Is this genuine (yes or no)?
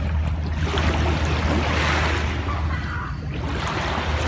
yes